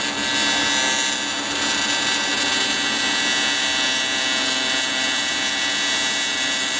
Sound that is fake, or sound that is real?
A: real